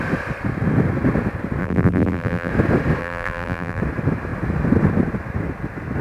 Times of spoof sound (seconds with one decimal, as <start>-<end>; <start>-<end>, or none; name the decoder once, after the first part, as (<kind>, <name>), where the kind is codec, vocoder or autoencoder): 1.6-2.5 (vocoder, BigVGAN v2); 3.0-3.8